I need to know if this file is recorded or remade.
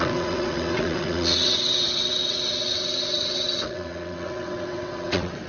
remade